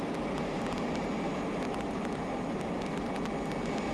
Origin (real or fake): real